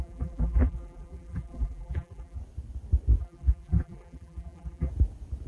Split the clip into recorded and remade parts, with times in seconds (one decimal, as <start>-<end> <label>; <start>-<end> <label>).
0.0-2.4 remade; 2.4-3.2 recorded; 3.2-4.9 remade; 4.9-5.5 recorded